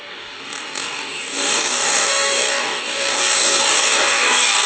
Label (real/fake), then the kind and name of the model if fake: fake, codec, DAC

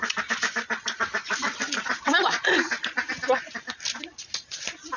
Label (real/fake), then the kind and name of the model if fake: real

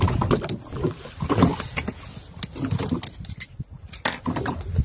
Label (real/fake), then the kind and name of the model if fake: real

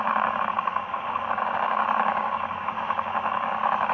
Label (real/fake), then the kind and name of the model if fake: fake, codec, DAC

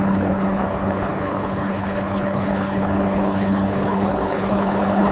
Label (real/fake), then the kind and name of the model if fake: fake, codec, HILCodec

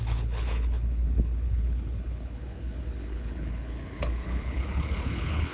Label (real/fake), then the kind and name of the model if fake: fake, codec, HILCodec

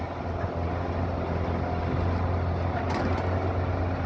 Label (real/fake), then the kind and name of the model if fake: real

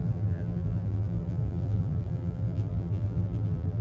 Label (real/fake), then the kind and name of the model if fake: fake, vocoder, BigVGAN v2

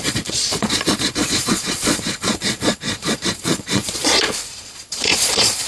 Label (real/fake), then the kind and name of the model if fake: fake, vocoder, Vocos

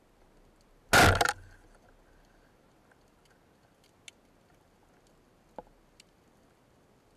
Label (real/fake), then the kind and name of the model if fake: real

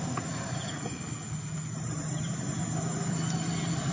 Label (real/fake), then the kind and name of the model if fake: real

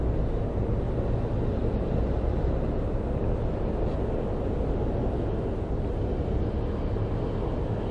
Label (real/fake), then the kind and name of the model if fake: real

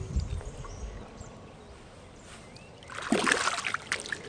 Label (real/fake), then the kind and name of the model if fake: real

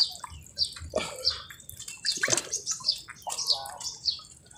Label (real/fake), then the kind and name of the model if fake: real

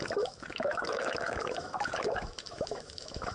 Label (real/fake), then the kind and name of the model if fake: fake, autoencoder, DAC-VAE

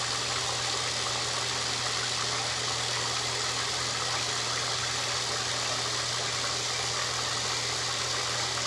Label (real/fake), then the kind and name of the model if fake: real